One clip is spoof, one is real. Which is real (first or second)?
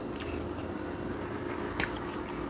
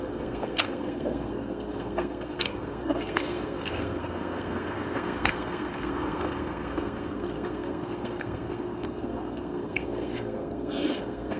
first